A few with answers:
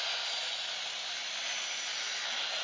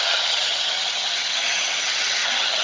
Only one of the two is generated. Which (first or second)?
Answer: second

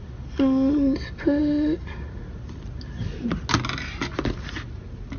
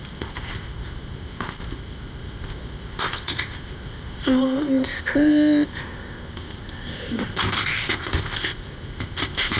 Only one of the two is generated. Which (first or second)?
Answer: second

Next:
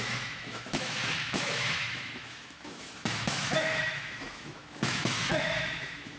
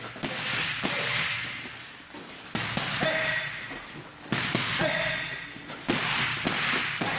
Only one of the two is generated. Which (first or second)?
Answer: first